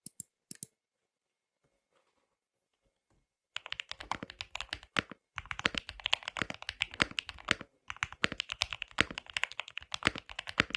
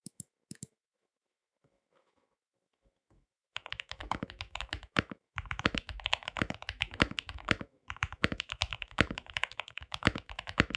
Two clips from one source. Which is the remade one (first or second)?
second